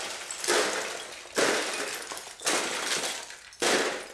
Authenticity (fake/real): real